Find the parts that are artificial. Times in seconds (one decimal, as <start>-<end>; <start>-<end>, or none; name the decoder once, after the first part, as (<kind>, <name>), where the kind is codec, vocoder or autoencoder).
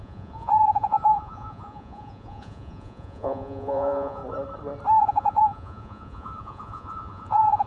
0.0-4.2 (vocoder, Vocos); 5.0-7.7